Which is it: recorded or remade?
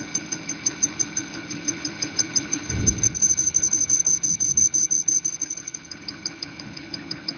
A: remade